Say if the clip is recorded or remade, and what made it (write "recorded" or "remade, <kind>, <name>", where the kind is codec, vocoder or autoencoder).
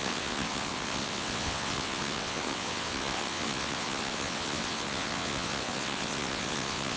remade, vocoder, WaveNeXt